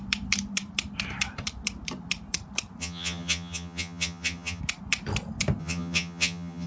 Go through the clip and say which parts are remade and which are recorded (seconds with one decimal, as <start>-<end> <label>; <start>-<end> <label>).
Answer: 0.0-2.8 recorded; 2.8-4.6 remade; 4.6-5.6 recorded; 5.6-6.7 remade